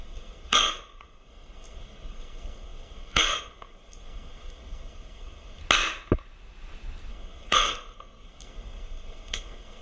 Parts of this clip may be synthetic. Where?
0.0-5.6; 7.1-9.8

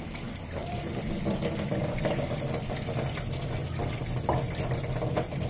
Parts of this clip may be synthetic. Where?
0.0-3.6; 5.1-5.5

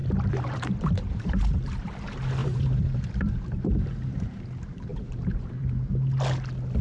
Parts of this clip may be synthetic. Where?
0.0-2.0; 2.4-4.4; 4.9-5.9

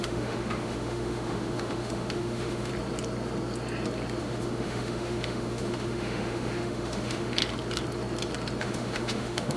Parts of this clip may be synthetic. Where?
0.0-2.7; 4.2-7.4; 8.6-9.6

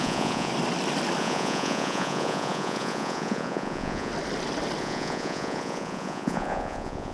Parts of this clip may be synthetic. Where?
0.0-0.5; 1.2-4.1; 4.8-7.1

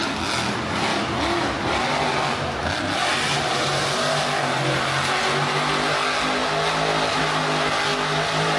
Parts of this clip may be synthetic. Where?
none

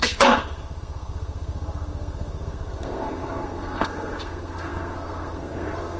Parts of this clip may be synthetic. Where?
0.0-6.0

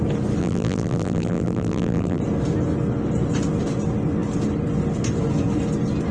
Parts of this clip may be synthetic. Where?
0.4-2.2